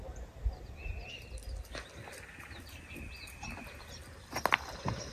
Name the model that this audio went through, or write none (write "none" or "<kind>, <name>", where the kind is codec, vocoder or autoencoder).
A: none